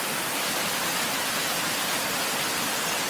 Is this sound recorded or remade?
recorded